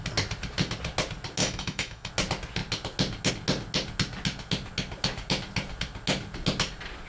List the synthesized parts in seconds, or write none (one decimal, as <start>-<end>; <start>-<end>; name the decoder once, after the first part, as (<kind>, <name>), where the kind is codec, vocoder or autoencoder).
1.4-2.1 (autoencoder, DAC-VAE)